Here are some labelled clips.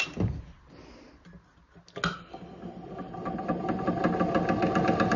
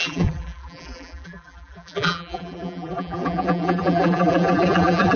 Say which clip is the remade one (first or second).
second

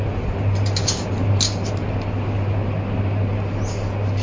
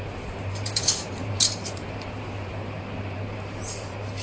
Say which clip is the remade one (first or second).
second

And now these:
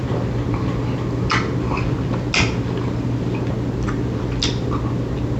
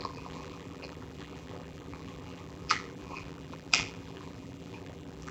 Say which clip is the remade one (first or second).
second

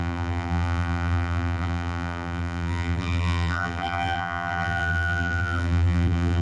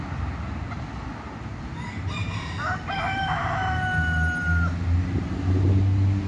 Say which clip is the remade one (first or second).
first